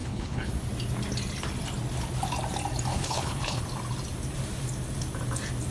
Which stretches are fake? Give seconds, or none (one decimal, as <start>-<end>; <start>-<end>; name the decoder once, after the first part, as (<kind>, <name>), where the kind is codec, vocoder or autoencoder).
0.0-0.5 (codec, HILCodec); 2.9-3.6